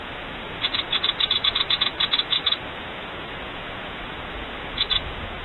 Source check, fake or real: fake